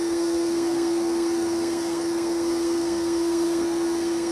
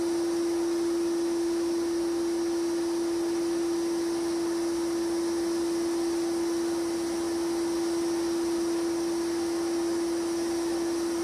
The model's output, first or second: first